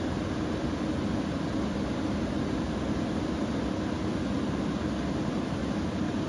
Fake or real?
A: real